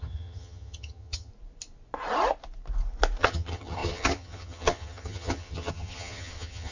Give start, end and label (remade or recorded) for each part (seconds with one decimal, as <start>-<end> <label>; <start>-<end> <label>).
0.0-1.3 remade; 1.3-3.2 recorded; 3.2-6.7 remade